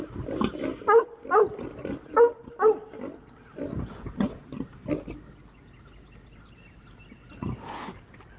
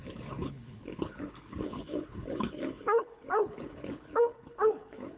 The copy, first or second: second